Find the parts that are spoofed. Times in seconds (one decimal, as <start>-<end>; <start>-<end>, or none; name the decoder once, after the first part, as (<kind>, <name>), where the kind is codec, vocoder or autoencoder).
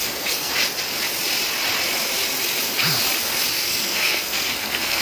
0.0-0.5 (codec, SNAC); 3.5-5.0